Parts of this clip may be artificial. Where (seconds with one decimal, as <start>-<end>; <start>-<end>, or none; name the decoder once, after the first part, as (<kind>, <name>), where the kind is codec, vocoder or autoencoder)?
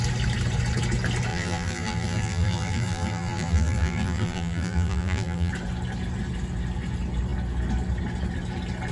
1.3-5.5 (vocoder, BigVGAN v2)